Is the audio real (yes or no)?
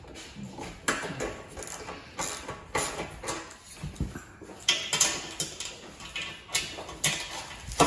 yes